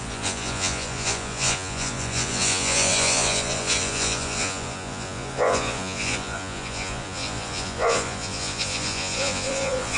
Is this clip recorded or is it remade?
remade